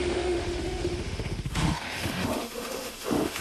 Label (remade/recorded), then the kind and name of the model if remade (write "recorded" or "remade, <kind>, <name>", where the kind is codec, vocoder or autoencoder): remade, autoencoder, DAC-VAE